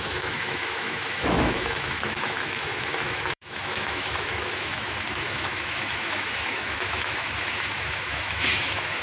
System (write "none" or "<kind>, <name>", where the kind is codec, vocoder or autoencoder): autoencoder, DAC-VAE